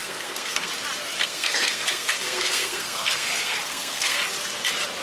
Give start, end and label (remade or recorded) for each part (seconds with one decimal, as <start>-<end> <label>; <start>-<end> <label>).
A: 0.0-0.7 remade; 0.7-1.2 recorded; 1.2-4.2 remade; 4.2-5.0 recorded